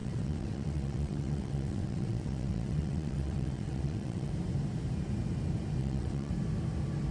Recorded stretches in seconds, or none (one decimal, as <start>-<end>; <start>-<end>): 4.3-5.8; 6.3-7.1